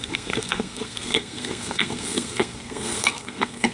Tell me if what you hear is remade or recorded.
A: remade